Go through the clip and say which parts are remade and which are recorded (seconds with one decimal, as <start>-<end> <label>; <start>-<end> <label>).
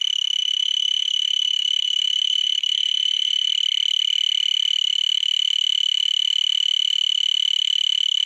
0.0-0.4 recorded; 0.4-3.5 remade; 3.5-8.3 recorded